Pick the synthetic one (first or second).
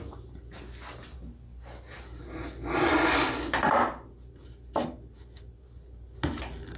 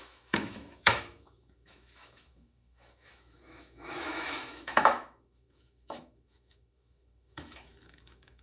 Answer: second